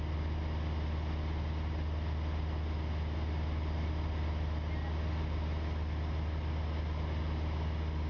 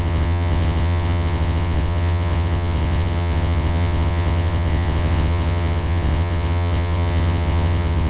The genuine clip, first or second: first